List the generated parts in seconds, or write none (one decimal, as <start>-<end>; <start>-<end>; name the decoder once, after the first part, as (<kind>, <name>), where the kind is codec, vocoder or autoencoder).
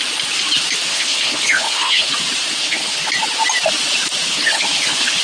0.9-2.1 (codec, HILCodec); 2.6-3.1; 4.3-5.2